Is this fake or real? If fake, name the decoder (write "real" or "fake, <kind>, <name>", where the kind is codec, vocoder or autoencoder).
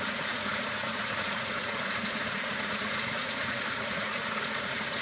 fake, vocoder, Vocos